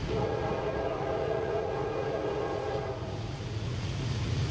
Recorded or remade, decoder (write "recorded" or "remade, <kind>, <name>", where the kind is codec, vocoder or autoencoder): remade, vocoder, Vocos